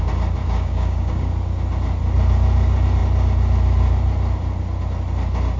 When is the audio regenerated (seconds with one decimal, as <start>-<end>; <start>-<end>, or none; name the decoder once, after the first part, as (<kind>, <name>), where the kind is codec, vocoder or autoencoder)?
0.4-1.3 (codec, DAC)